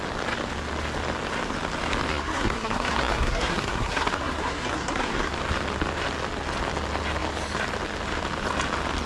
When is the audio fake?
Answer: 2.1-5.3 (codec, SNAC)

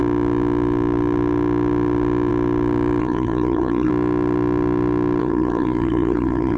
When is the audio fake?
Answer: 3.0-3.9 (codec, SNAC); 5.2-6.6

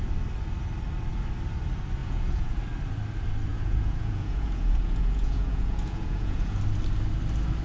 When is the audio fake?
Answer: 2.0-2.6 (vocoder, Vocos); 3.5-6.6

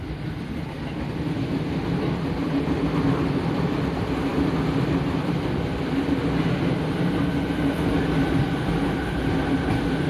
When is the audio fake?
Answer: none

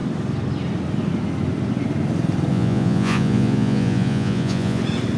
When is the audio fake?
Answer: 2.5-4.8 (vocoder, Vocos)